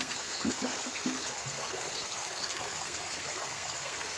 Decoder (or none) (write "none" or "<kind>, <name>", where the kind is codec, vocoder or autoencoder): codec, SNAC